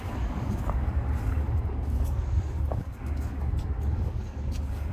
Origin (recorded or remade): remade